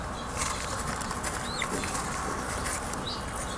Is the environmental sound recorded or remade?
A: recorded